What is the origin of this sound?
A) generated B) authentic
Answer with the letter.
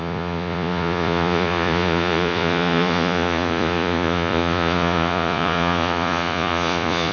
A